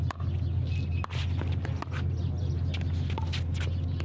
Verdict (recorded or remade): recorded